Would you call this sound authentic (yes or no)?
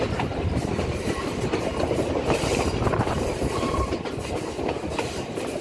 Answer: no